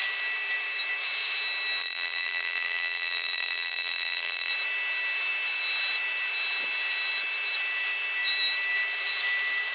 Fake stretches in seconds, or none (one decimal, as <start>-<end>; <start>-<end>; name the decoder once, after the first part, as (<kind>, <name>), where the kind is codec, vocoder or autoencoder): 1.8-4.5 (vocoder, BigVGAN v2)